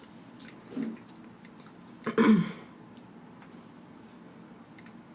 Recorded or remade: recorded